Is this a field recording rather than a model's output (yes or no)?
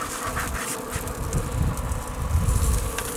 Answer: yes